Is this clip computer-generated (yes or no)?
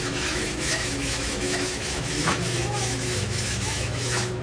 yes